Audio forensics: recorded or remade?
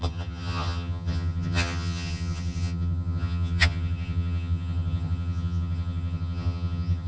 remade